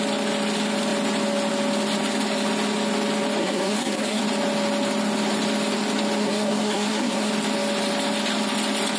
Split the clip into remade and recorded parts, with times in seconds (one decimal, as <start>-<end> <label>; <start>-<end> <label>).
0.0-3.4 recorded; 3.4-4.2 remade; 4.2-6.2 recorded; 6.2-7.3 remade; 7.3-9.0 recorded